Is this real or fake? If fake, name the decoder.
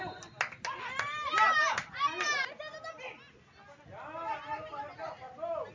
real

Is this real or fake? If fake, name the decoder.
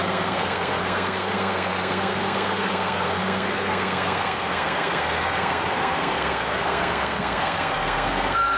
fake, codec, SNAC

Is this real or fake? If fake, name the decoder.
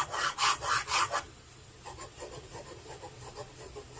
real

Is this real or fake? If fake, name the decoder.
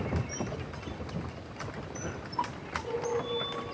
real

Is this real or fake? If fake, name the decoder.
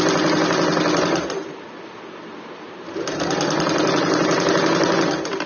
real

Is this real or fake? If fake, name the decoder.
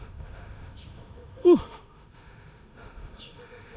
fake, autoencoder, DAC-VAE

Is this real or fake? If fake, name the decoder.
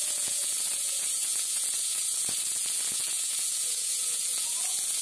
fake, vocoder, Vocos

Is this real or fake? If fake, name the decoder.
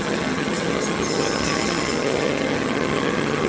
fake, vocoder, HiFi-GAN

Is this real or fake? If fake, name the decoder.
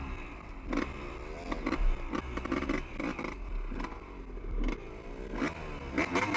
real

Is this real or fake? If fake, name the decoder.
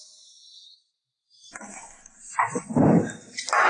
real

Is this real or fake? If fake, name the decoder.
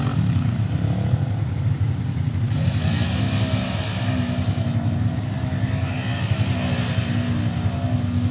real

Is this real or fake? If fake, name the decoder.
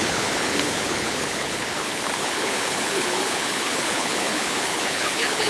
fake, codec, HILCodec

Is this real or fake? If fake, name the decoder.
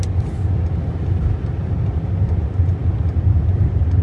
real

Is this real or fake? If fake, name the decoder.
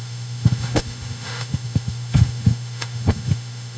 fake, autoencoder, DAC-VAE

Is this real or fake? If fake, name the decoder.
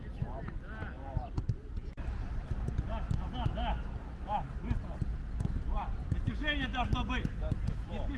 real